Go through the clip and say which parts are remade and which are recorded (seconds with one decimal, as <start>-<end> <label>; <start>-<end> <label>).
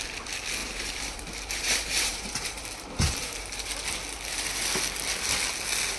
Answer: 0.0-0.6 recorded; 0.6-3.5 remade; 3.5-6.0 recorded